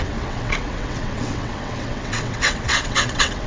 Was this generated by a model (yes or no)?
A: yes